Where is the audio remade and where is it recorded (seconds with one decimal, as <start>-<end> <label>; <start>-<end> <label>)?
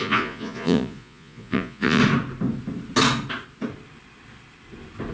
0.0-2.0 remade; 2.0-5.1 recorded